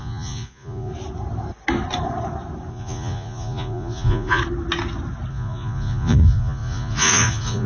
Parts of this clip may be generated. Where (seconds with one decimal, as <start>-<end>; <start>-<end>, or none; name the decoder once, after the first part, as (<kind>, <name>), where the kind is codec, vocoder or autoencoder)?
0.0-0.9 (vocoder, Vocos); 2.7-4.4; 5.3-7.7